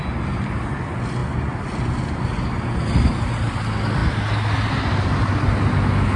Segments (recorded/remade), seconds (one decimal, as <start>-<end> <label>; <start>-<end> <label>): 0.0-6.2 recorded